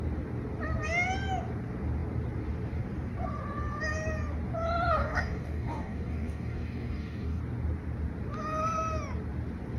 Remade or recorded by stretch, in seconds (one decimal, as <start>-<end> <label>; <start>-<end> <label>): 0.0-5.0 recorded; 5.0-7.4 remade; 7.4-9.8 recorded